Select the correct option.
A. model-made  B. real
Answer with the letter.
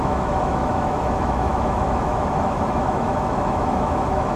A